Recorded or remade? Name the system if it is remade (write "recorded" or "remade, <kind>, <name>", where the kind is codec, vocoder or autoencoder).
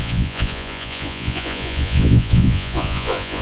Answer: remade, vocoder, Vocos